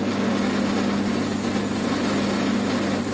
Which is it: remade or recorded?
recorded